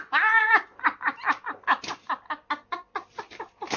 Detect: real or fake real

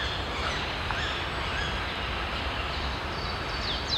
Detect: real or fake real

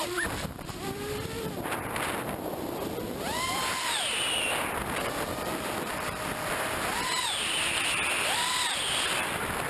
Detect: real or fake fake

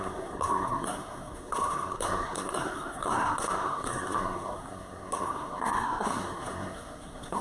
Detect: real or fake fake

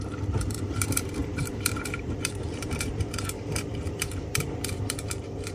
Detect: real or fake fake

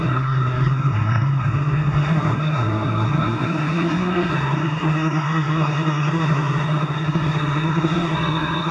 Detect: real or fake fake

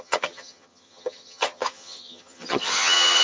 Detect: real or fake fake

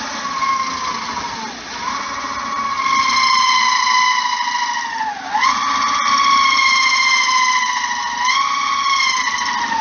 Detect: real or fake real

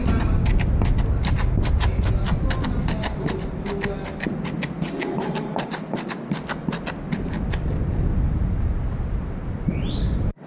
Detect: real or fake real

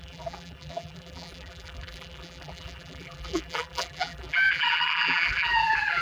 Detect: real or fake fake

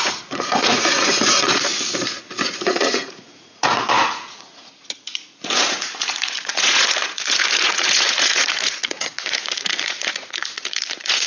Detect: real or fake fake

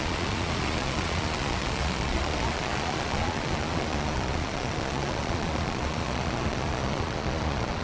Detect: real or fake fake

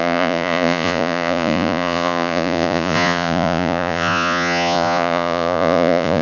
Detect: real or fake fake